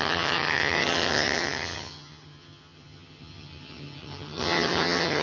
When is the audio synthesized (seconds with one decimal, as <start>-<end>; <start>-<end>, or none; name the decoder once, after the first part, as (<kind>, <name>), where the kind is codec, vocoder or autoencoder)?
0.0-5.2 (vocoder, HiFi-GAN)